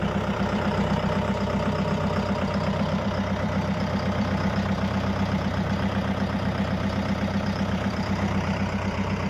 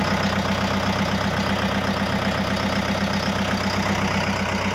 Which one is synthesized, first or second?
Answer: first